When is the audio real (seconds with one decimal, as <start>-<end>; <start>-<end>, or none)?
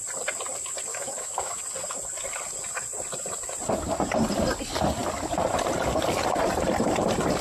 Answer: 0.0-0.9; 1.6-7.4